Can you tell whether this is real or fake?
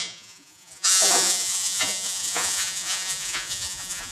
fake